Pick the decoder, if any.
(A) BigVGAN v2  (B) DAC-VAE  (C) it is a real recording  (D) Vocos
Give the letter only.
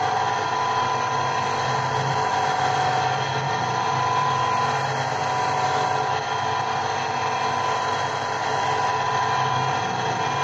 C